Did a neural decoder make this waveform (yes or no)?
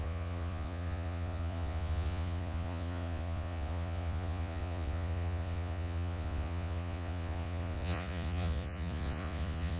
yes